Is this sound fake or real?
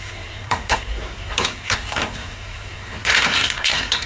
fake